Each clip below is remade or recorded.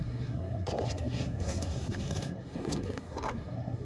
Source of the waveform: remade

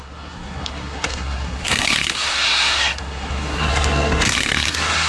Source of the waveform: remade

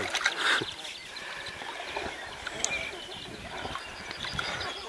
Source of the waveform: recorded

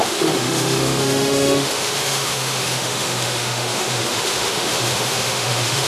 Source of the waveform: remade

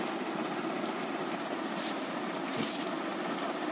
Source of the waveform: recorded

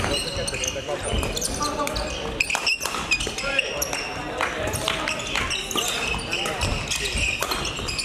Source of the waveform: recorded